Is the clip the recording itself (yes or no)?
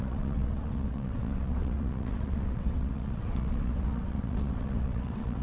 no